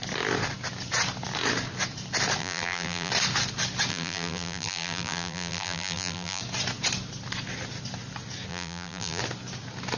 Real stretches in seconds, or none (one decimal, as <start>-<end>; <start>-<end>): 0.0-2.4; 3.1-3.9; 6.4-8.5; 9.2-10.0